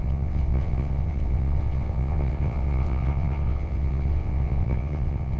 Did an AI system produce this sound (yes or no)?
yes